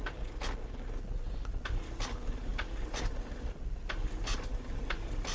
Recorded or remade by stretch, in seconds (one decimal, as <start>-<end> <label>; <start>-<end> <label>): 0.0-5.3 recorded